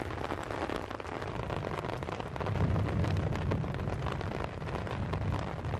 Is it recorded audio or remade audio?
recorded